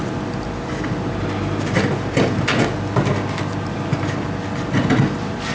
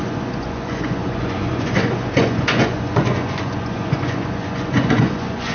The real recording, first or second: first